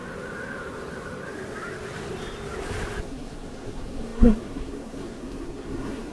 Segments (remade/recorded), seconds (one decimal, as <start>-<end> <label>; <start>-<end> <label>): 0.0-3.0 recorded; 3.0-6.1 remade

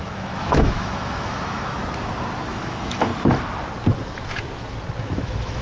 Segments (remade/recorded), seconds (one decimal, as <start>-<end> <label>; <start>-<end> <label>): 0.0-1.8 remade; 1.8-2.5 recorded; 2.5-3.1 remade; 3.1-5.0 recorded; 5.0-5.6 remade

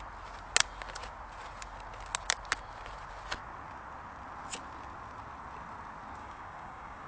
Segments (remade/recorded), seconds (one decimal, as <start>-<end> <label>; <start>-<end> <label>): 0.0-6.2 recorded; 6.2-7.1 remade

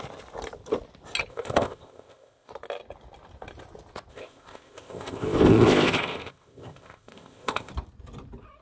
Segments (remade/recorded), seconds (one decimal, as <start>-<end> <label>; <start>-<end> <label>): 0.0-1.3 recorded; 1.3-2.5 remade; 2.5-4.1 recorded; 4.1-7.7 remade; 7.7-8.6 recorded

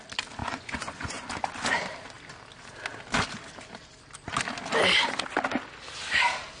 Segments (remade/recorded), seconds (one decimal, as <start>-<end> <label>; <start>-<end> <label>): 0.0-0.4 recorded; 0.4-1.3 remade; 1.3-6.6 recorded